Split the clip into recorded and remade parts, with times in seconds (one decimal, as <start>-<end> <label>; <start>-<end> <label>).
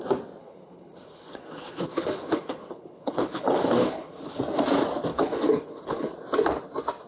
0.0-0.4 recorded; 0.4-4.4 remade; 4.4-5.1 recorded; 5.1-6.1 remade; 6.1-7.1 recorded